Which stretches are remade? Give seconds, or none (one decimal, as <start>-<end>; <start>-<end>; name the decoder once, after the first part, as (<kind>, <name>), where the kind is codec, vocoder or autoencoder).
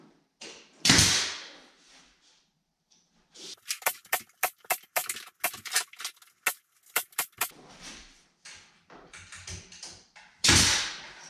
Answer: 0.0-5.0 (vocoder, BigVGAN v2); 6.9-11.3